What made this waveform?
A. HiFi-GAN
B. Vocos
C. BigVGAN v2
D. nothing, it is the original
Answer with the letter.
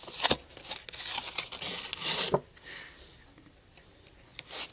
D